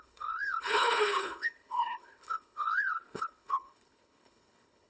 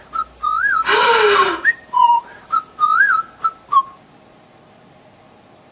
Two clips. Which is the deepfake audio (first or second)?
first